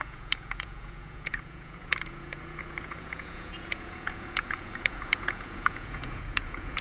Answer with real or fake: fake